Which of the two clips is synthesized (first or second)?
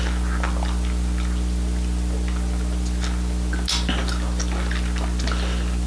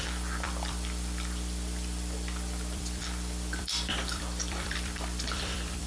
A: second